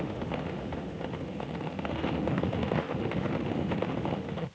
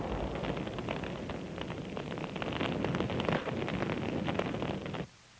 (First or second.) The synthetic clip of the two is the first